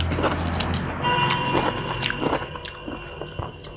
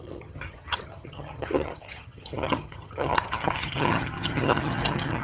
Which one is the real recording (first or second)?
first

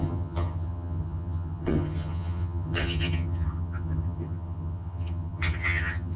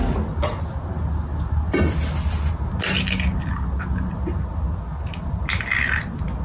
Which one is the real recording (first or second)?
second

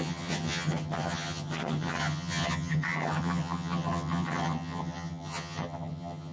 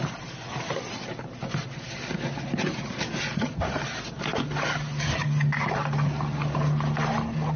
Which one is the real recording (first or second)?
second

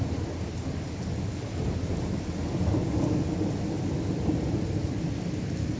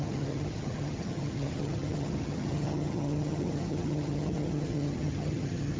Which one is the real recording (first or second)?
first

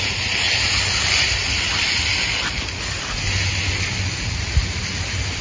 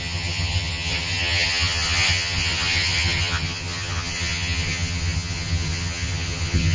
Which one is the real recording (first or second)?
first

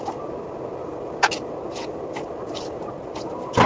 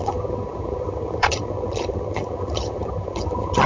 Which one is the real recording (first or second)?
first